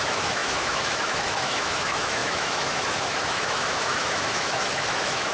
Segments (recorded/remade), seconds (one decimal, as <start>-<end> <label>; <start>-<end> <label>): 0.0-5.3 remade